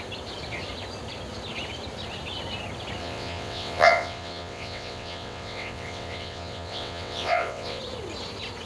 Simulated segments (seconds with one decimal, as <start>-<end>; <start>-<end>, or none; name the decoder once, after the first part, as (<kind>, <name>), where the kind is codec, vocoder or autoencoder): 3.0-7.8 (vocoder, WaveNeXt)